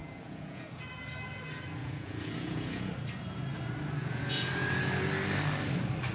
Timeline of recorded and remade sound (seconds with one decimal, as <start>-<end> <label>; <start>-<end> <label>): 0.0-0.8 remade; 0.8-1.8 recorded; 1.8-2.9 remade; 2.9-4.0 recorded; 4.0-4.5 remade; 4.5-6.1 recorded